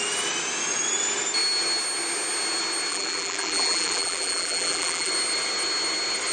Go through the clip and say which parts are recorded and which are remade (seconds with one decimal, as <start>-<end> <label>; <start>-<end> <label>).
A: 0.0-2.9 recorded; 2.9-5.1 remade; 5.1-6.3 recorded